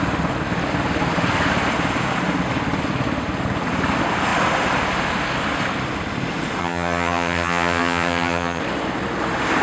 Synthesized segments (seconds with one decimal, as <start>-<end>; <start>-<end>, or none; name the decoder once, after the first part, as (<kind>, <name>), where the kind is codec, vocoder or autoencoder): 6.6-8.6 (vocoder, HiFi-GAN)